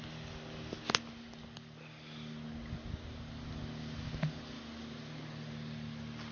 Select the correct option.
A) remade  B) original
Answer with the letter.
B